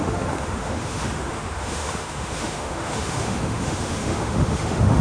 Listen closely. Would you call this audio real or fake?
fake